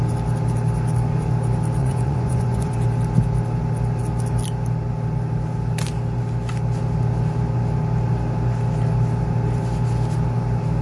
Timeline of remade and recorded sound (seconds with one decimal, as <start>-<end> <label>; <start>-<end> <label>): 0.0-1.8 recorded; 1.8-2.7 remade; 2.7-10.8 recorded